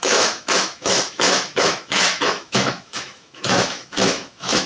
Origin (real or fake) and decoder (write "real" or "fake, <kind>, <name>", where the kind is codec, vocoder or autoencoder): fake, autoencoder, DAC-VAE